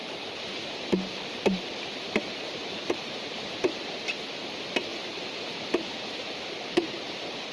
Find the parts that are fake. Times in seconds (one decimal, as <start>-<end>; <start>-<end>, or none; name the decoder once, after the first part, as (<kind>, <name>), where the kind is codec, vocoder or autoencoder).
0.0-4.5 (vocoder, BigVGAN v2); 4.9-6.6